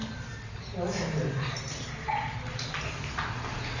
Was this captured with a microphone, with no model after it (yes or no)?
yes